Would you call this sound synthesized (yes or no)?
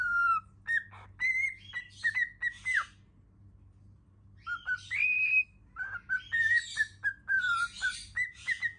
no